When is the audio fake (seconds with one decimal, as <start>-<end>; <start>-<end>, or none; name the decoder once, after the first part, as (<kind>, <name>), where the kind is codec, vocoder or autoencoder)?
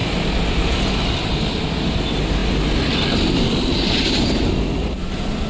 none